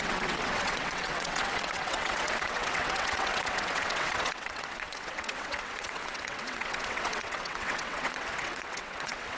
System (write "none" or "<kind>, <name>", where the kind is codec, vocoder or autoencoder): vocoder, WaveNeXt